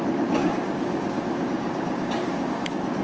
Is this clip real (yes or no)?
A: no